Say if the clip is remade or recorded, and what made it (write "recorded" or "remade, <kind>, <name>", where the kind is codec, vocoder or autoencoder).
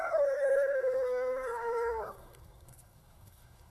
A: remade, codec, SNAC